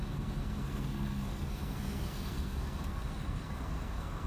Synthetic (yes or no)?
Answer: yes